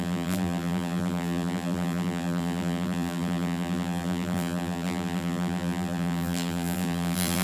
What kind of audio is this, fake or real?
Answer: fake